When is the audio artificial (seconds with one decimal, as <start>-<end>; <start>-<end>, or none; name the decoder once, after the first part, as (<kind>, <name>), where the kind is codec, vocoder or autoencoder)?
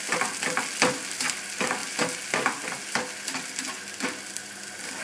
none